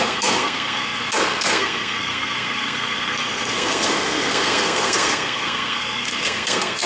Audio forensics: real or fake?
fake